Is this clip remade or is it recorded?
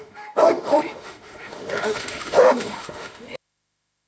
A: remade